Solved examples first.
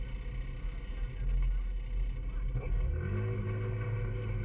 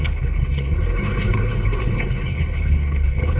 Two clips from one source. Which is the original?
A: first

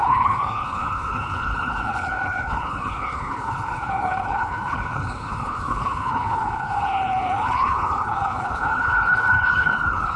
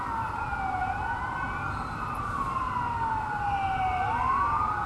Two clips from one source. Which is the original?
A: second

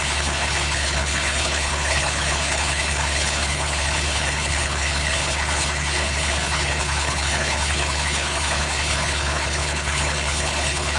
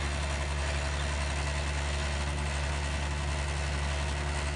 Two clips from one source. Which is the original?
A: second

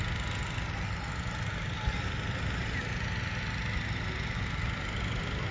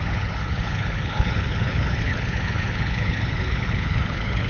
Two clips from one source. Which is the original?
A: first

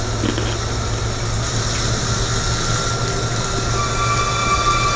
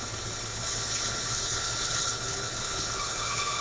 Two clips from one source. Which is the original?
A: first